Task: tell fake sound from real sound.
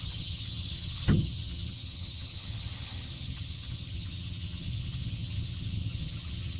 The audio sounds fake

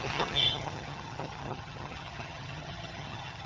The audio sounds fake